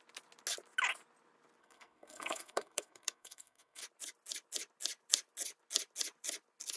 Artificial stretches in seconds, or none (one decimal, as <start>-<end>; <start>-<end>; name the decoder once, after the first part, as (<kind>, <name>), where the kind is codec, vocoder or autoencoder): 1.6-3.8 (codec, SNAC)